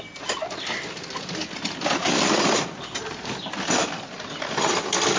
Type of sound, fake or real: real